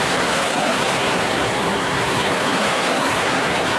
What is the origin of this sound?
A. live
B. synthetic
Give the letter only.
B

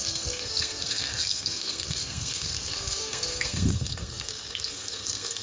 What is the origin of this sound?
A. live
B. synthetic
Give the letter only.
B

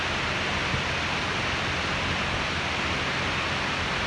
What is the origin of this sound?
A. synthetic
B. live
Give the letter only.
B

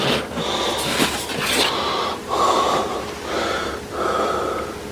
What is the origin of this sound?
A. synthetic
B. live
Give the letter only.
B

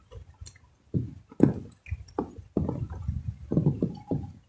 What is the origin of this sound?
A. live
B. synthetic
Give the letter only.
A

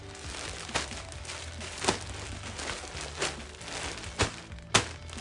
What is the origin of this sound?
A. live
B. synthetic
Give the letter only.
A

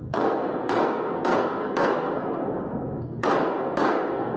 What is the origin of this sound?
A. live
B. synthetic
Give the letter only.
B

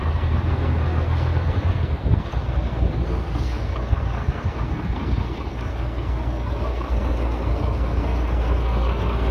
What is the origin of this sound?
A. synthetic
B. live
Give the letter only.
A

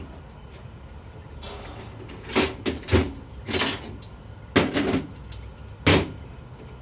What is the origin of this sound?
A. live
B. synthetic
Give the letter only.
A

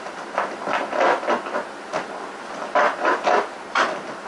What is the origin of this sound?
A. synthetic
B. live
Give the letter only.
B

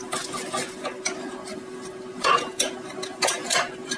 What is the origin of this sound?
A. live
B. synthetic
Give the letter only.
A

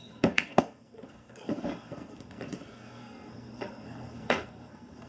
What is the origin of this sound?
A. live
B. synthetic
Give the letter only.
B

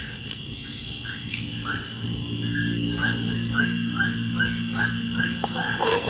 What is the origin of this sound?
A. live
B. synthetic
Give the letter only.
B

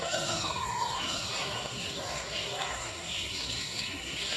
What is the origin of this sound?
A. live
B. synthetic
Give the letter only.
B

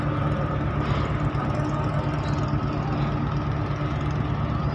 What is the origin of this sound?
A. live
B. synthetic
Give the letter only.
A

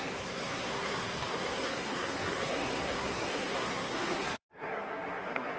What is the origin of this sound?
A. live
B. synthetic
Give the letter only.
B